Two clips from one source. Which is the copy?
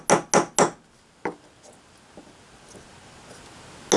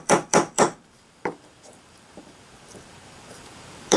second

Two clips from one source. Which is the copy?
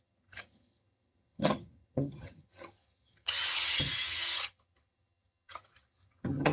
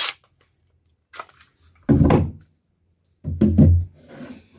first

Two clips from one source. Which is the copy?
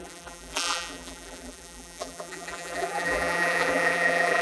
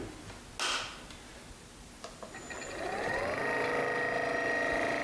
first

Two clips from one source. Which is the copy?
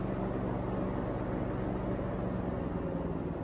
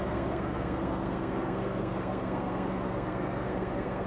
second